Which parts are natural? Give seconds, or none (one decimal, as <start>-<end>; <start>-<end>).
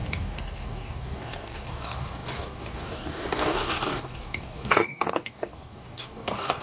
none